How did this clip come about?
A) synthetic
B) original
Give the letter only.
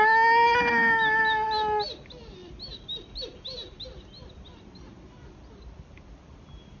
B